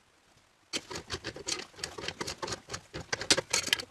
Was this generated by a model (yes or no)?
no